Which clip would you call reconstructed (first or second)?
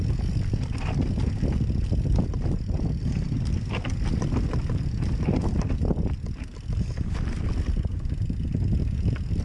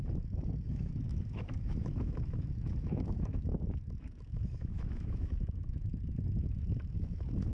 second